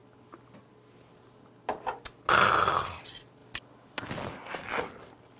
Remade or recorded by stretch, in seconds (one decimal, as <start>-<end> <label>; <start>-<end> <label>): 0.0-5.4 recorded